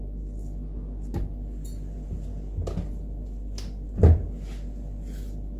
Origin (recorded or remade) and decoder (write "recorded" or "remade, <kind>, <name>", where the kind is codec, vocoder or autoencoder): recorded